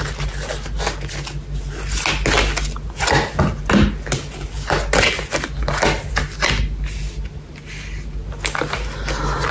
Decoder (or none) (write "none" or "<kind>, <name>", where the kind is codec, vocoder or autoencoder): none